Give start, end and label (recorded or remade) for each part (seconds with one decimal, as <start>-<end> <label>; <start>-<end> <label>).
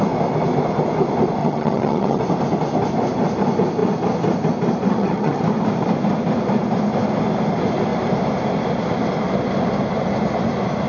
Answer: 0.0-1.4 recorded; 1.4-2.2 remade; 2.2-4.9 recorded; 4.9-5.4 remade; 5.4-10.9 recorded